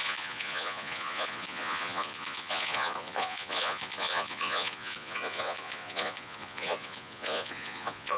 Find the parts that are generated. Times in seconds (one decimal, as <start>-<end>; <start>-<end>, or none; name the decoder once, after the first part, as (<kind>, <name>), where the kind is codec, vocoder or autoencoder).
0.0-8.2 (vocoder, Vocos)